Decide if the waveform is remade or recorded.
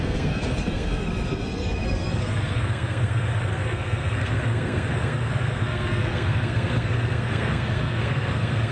remade